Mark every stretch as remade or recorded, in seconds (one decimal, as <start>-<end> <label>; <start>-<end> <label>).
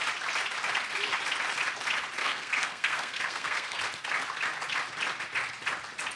0.0-2.2 recorded; 2.2-3.8 remade; 3.8-6.2 recorded